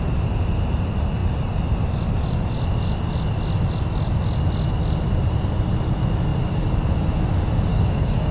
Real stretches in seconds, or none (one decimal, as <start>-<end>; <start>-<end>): 0.0-7.7

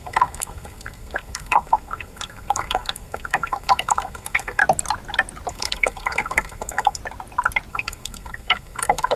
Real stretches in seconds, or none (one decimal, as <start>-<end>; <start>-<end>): 4.6-5.5; 7.0-7.7

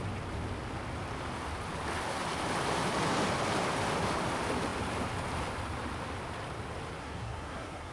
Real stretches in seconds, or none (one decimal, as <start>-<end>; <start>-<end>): 0.0-7.0

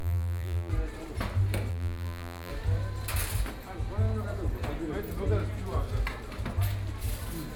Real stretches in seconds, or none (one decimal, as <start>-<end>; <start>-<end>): 0.7-1.7; 2.5-7.6